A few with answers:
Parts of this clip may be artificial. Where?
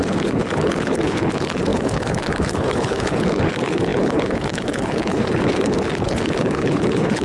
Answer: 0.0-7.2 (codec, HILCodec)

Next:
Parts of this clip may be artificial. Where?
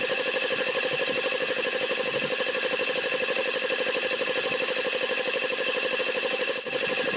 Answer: none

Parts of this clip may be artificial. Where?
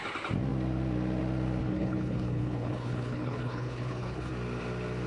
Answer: 1.6-4.3 (codec, HILCodec)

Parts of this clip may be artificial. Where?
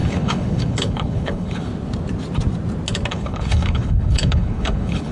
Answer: 0.0-1.7 (codec, HILCodec); 3.1-5.1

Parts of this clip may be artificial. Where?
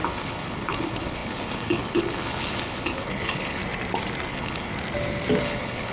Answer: 0.0-3.6 (codec, HILCodec); 4.3-4.7; 5.4-5.9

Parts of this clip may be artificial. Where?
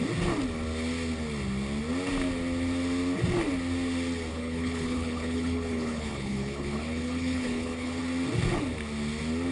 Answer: 4.3-8.0 (codec, HILCodec)